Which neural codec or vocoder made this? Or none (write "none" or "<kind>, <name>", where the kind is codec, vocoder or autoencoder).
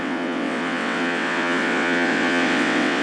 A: vocoder, WaveNeXt